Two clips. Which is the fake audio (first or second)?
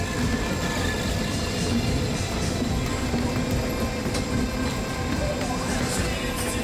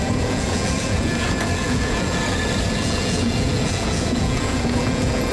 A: second